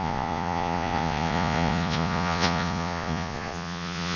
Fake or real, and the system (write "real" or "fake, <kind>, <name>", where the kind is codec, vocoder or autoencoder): fake, vocoder, Vocos